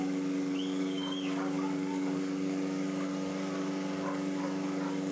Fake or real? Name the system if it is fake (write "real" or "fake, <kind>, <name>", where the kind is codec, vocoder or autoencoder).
fake, codec, DAC